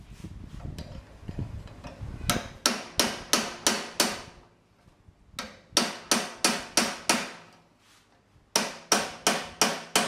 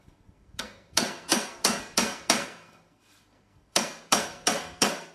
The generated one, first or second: second